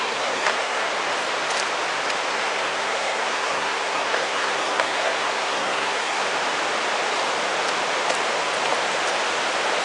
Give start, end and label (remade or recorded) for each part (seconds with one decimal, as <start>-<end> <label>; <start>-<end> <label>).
0.0-0.9 remade; 0.9-2.3 recorded; 2.3-6.2 remade; 6.2-9.8 recorded